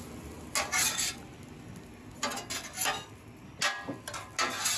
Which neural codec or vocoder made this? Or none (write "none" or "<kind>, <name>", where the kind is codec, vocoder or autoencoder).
none